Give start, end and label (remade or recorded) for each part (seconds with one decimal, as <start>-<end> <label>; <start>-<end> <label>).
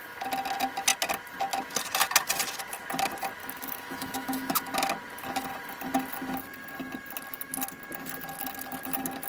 0.0-3.4 recorded; 3.4-4.6 remade; 4.6-9.3 recorded